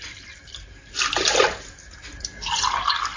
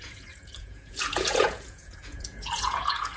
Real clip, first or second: first